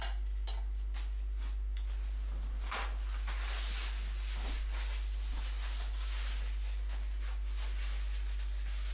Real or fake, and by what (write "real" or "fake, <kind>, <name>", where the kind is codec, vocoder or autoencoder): real